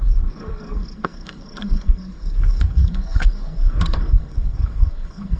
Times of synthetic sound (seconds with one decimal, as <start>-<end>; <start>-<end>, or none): 0.0-5.4